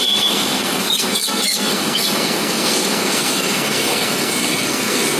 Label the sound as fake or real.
fake